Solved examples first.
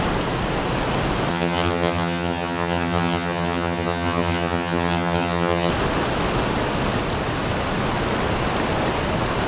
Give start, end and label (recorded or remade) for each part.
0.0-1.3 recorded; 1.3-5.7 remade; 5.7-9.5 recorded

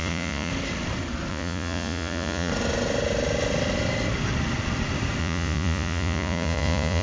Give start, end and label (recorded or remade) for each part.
0.0-0.5 remade; 0.5-1.3 recorded; 1.3-2.5 remade; 2.5-5.2 recorded; 5.2-7.0 remade

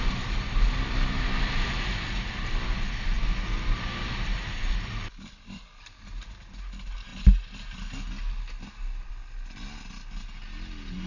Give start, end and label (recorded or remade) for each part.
0.0-11.1 recorded

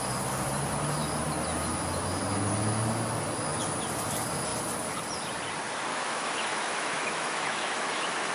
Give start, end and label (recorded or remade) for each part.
0.0-5.9 recorded; 5.9-8.3 remade

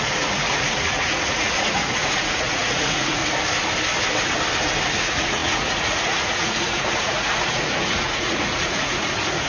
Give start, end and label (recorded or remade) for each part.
0.0-3.2 remade; 3.2-5.0 recorded; 5.0-9.5 remade

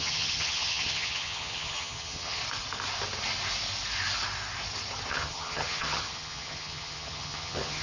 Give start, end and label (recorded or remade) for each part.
0.0-2.4 remade; 2.4-5.1 recorded; 5.1-7.8 remade

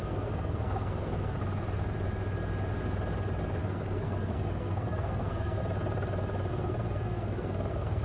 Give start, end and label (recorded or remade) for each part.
0.0-1.4 remade; 1.4-3.6 recorded; 3.6-5.6 remade; 5.6-6.5 recorded; 6.5-8.0 remade

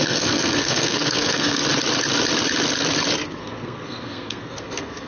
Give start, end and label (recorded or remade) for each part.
0.0-1.6 remade; 1.6-3.4 recorded; 3.4-5.1 remade